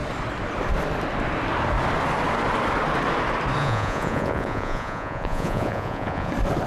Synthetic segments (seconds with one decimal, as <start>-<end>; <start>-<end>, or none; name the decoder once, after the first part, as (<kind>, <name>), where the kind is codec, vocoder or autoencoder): 3.6-6.3 (vocoder, Vocos)